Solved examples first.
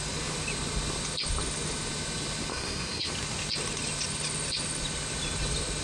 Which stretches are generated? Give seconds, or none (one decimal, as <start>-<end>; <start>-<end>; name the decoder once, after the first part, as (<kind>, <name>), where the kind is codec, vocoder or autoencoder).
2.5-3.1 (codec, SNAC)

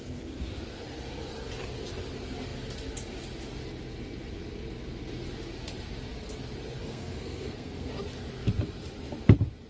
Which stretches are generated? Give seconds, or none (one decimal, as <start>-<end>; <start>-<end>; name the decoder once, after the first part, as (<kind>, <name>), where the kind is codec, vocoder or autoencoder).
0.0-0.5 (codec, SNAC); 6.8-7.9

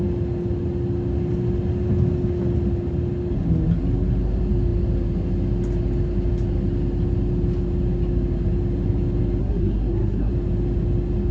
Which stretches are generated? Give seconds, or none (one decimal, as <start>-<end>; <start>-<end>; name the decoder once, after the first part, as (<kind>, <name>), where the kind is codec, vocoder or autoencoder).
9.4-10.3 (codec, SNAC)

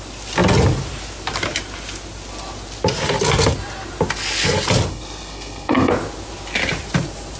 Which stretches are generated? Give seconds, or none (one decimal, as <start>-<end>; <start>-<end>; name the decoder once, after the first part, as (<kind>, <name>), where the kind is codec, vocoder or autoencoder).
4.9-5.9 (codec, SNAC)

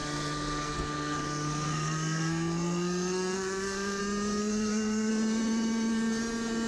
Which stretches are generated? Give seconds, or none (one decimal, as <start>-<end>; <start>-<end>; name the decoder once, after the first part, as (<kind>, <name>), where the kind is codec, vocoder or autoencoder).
0.0-4.0 (codec, SNAC); 4.4-5.1

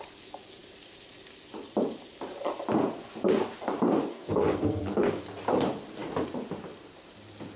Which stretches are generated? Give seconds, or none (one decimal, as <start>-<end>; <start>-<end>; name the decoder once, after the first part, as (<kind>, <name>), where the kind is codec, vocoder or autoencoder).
4.1-5.1 (codec, SNAC)